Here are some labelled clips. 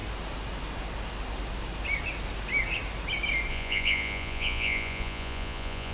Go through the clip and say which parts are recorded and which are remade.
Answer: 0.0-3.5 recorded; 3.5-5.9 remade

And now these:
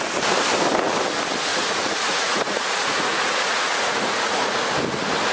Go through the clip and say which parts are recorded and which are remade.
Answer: 0.0-1.5 recorded; 1.5-4.7 remade; 4.7-5.3 recorded